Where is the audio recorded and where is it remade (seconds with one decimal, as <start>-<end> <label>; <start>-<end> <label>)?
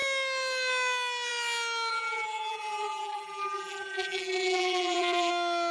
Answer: 0.0-1.9 recorded; 1.9-5.3 remade; 5.3-5.7 recorded